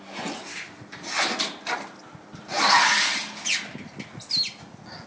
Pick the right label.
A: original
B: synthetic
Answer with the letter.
A